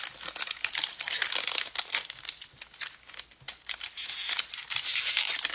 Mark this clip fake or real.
real